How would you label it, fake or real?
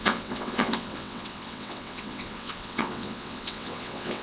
fake